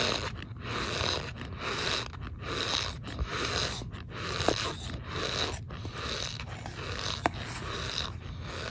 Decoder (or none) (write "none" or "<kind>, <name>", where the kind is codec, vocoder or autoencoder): none